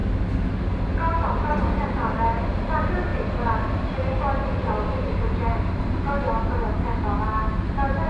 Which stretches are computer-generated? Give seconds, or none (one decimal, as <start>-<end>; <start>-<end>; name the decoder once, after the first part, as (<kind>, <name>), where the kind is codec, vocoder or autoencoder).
none